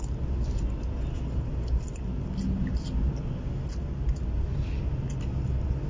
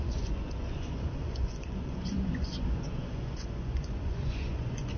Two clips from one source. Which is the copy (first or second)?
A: second